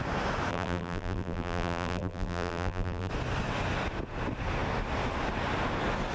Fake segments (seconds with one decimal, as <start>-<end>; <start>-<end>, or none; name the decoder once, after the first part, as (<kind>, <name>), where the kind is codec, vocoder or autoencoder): 0.5-3.1 (vocoder, BigVGAN v2)